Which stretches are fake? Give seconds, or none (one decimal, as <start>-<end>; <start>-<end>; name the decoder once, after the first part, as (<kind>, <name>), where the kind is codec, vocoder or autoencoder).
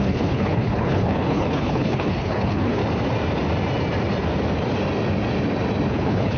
0.0-2.8 (codec, HILCodec); 5.9-6.4